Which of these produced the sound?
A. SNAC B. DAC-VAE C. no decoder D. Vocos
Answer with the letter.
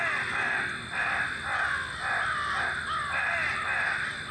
C